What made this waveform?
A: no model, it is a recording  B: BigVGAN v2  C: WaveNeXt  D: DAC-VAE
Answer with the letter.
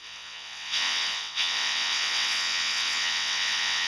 C